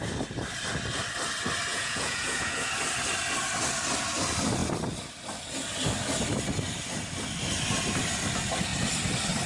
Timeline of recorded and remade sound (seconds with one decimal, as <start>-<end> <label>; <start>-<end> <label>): 0.0-1.7 recorded; 1.7-2.7 remade; 2.7-9.5 recorded